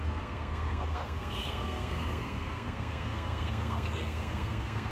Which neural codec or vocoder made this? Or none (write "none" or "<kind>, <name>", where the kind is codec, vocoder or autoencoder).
codec, SNAC